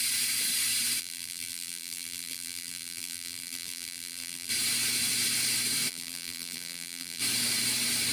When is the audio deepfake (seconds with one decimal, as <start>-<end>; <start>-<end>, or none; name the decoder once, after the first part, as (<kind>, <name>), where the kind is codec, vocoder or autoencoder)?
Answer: 1.0-4.5 (vocoder, BigVGAN v2); 5.9-7.2